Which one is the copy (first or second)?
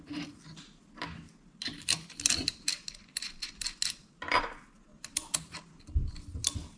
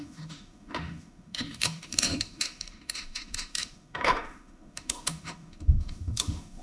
second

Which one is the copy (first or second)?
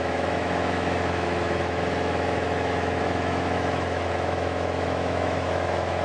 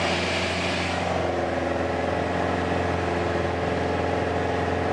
first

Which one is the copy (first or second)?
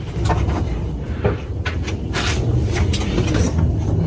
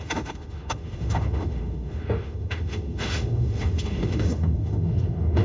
second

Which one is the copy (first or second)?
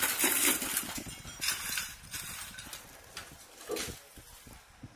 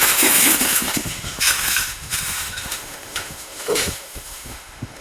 second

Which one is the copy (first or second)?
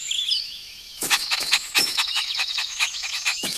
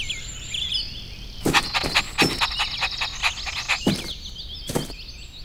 first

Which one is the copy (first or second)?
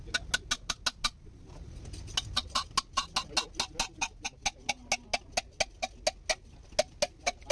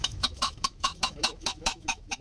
second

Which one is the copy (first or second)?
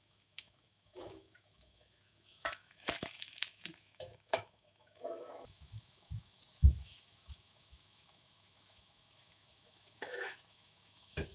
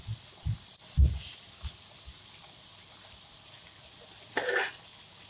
first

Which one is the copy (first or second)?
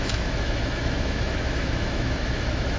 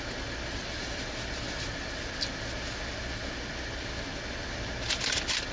first